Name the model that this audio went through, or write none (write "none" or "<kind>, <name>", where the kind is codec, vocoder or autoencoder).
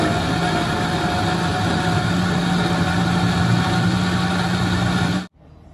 none